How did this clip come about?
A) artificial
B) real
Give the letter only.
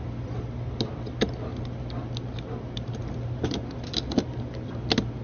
B